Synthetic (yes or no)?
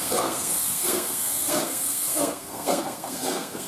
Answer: yes